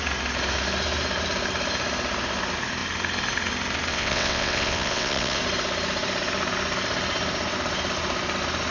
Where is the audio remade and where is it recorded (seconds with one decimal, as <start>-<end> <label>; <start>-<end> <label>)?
0.0-3.9 recorded; 3.9-5.4 remade; 5.4-8.7 recorded